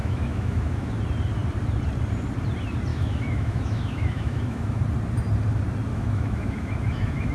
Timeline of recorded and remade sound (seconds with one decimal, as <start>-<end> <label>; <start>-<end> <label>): 0.0-0.9 remade; 0.9-2.9 recorded; 2.9-4.8 remade; 4.8-5.9 recorded; 5.9-7.3 remade